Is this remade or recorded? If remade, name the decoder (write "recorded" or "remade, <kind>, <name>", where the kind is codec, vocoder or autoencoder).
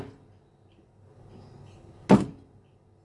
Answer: recorded